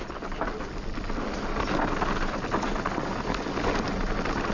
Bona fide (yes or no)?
yes